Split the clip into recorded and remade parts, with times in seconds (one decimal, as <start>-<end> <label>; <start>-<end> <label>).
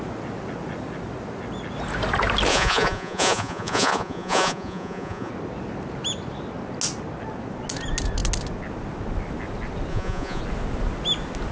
0.0-2.5 recorded; 2.5-5.3 remade; 5.3-9.9 recorded; 9.9-10.4 remade; 10.4-11.5 recorded